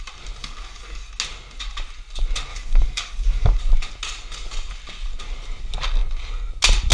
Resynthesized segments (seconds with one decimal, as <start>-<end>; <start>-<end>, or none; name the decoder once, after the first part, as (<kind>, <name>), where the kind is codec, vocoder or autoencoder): 0.4-1.1 (codec, DAC); 2.5-3.6